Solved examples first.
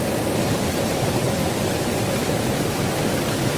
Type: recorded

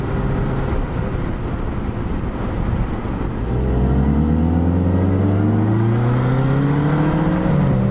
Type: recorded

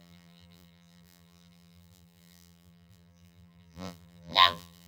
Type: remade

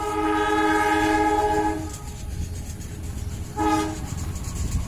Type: recorded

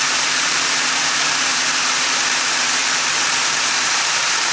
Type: remade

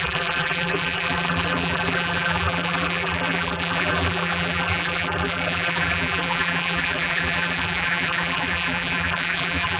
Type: remade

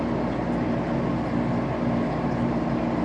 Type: recorded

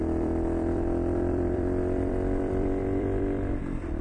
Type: remade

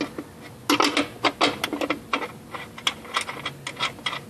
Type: recorded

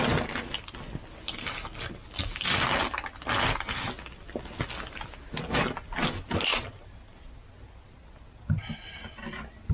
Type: recorded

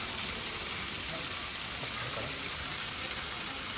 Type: recorded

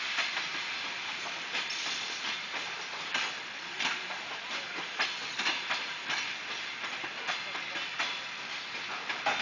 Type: recorded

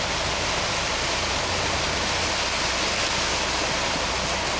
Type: recorded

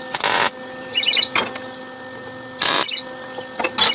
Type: recorded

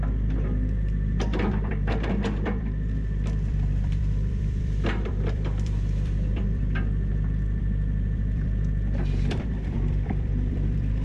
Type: remade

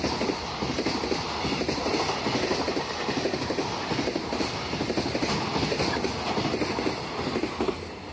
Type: recorded